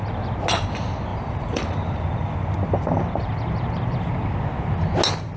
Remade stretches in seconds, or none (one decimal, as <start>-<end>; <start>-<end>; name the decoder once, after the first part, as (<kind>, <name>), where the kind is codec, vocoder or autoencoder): 1.1-3.0 (vocoder, BigVGAN v2)